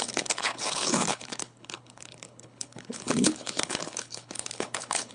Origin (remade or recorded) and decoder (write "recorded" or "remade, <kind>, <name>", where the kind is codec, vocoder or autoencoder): remade, codec, HILCodec